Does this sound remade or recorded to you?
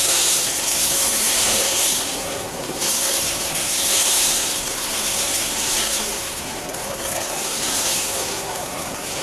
remade